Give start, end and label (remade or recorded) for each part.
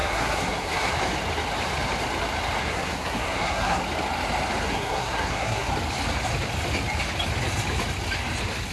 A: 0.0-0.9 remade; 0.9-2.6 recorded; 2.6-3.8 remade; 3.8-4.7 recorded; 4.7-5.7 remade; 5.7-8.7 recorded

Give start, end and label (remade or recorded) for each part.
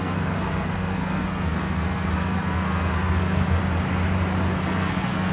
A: 0.0-3.6 remade; 3.6-4.6 recorded; 4.6-5.3 remade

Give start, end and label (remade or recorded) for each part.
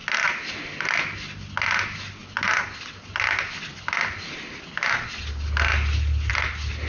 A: 0.0-6.9 recorded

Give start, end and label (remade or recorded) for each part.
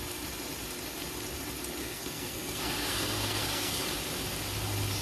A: 0.0-1.8 recorded; 1.8-3.8 remade; 3.8-5.0 recorded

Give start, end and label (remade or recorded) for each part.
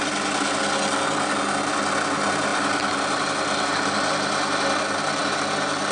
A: 0.0-5.9 recorded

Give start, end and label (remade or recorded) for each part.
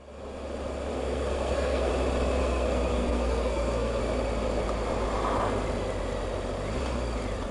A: 0.0-0.9 recorded; 0.9-1.9 remade; 1.9-2.4 recorded; 2.4-4.0 remade; 4.0-7.5 recorded